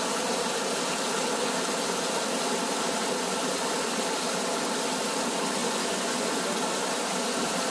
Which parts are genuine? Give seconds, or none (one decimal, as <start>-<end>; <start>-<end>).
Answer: 0.0-5.6; 6.4-7.7